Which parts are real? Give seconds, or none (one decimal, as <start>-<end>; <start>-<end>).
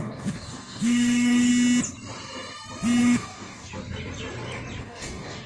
1.5-3.0; 3.7-4.8